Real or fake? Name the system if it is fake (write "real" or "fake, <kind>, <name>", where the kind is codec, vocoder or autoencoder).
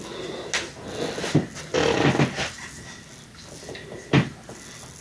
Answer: real